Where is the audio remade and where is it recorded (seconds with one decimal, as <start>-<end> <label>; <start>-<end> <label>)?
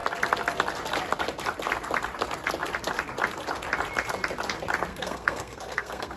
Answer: 0.0-4.9 recorded; 4.9-6.2 remade